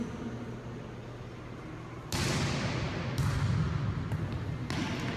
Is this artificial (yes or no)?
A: no